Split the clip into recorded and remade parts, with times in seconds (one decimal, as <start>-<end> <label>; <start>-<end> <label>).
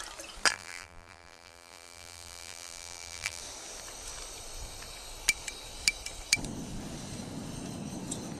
0.0-0.5 recorded; 0.5-3.4 remade; 3.4-8.4 recorded